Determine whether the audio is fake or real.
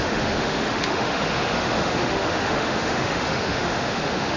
fake